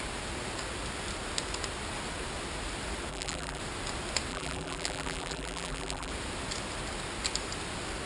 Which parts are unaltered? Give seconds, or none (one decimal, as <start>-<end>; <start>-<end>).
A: 0.0-3.1; 3.6-4.3; 6.1-8.1